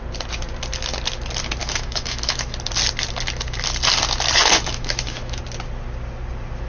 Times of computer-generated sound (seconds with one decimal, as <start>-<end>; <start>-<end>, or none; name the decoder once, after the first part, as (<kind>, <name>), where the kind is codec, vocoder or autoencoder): 1.6-2.5 (autoencoder, DAC-VAE); 4.4-5.4